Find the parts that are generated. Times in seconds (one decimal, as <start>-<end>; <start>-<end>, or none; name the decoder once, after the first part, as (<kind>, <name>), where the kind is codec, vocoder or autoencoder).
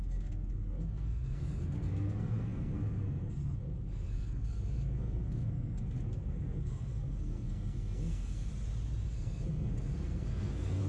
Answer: 0.0-8.5 (codec, SNAC); 9.1-10.9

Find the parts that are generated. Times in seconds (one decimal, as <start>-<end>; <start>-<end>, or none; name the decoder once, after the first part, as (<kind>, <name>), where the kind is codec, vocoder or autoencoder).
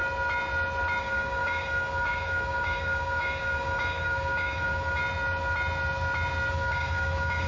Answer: 1.0-5.0 (codec, DAC); 6.5-7.5